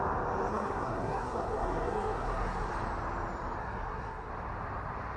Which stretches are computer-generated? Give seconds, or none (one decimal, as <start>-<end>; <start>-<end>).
0.5-2.7; 3.6-4.3